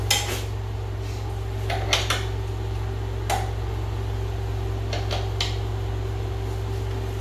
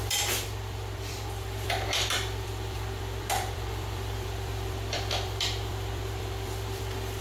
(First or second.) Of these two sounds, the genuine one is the first